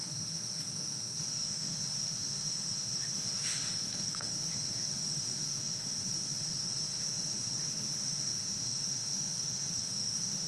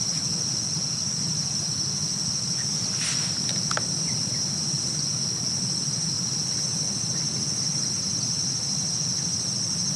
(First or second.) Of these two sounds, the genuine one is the second